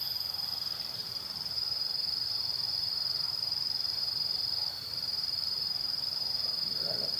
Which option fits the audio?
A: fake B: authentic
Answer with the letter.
A